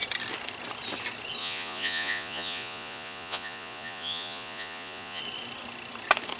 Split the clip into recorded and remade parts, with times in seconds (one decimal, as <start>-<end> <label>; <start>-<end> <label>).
0.0-1.4 recorded; 1.4-5.2 remade; 5.2-6.4 recorded